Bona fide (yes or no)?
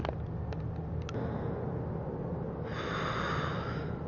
yes